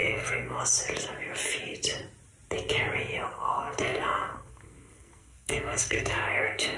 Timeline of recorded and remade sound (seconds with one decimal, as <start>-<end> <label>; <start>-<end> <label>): 0.0-0.6 remade; 0.6-3.3 recorded; 3.3-6.8 remade